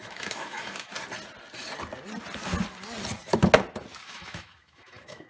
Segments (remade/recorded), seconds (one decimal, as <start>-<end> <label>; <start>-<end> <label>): 0.0-0.9 remade; 0.9-4.0 recorded; 4.0-5.3 remade